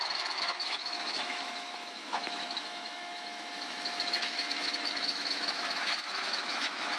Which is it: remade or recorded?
remade